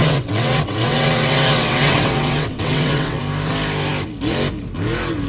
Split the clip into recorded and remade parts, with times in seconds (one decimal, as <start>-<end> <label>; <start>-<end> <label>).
0.0-3.2 remade; 3.2-5.3 recorded